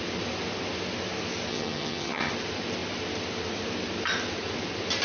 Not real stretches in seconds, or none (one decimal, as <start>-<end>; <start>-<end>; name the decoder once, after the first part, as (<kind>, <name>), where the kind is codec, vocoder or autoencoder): 1.5-2.3 (vocoder, HiFi-GAN)